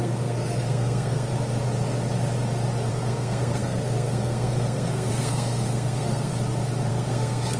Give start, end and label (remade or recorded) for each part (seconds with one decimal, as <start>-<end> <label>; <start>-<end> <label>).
0.0-1.3 remade; 1.3-2.9 recorded; 2.9-6.3 remade; 6.3-6.9 recorded; 6.9-7.6 remade